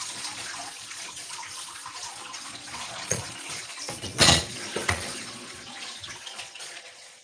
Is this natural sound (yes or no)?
no